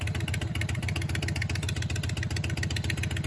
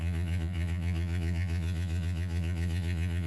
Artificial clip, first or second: second